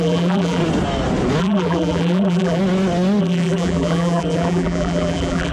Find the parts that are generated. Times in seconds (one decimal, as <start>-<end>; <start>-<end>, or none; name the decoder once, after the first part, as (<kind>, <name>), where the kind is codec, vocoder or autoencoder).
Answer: 0.0-0.6 (vocoder, BigVGAN v2); 1.4-2.6; 3.2-5.5